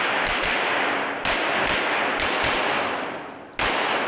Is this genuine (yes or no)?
yes